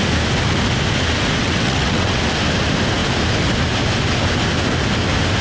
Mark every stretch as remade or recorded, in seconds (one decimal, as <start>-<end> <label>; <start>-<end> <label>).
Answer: 0.0-1.4 recorded; 1.4-2.2 remade; 2.2-5.4 recorded